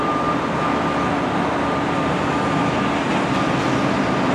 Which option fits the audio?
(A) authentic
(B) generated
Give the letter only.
A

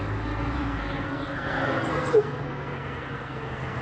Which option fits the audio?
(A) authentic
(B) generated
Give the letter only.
B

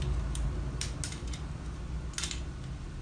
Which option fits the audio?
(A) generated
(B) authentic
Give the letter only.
B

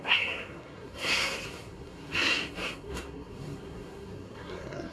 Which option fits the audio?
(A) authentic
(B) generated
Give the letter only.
B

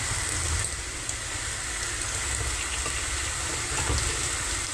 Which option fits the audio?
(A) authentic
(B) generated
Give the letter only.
A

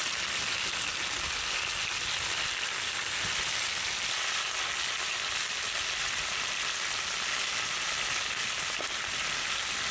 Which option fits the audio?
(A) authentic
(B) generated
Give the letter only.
A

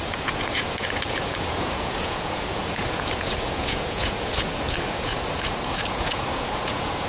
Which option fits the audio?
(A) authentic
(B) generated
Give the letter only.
B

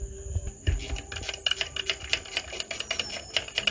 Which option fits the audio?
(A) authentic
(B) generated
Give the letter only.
A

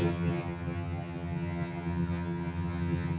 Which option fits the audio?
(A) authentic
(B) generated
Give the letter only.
B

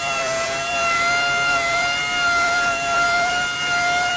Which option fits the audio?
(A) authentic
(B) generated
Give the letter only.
B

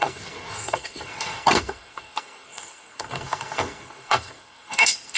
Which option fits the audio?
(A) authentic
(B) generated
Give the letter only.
B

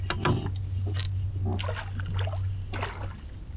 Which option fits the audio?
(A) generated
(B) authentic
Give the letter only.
B